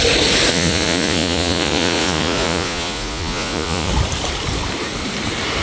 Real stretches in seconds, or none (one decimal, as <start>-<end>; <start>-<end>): 0.0-0.5; 3.9-5.6